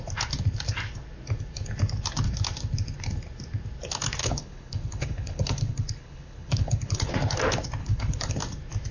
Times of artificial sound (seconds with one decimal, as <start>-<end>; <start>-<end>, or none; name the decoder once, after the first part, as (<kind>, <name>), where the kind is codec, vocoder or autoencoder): 4.2-7.1 (codec, HILCodec); 7.8-8.3